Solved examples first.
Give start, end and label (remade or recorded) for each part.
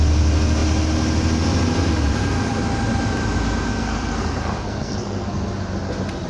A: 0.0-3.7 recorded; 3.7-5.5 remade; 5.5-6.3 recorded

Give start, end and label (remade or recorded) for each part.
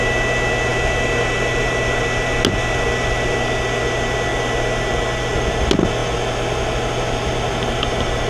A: 0.0-8.3 recorded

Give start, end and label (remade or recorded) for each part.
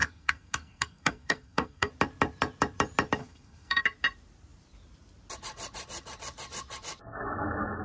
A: 0.0-1.9 remade; 1.9-3.2 recorded; 3.2-3.8 remade; 3.8-7.8 recorded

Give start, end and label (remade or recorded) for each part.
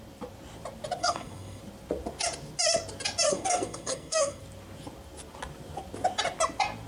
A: 0.0-1.0 recorded; 1.0-1.6 remade; 1.6-3.3 recorded; 3.3-4.4 remade; 4.4-6.9 recorded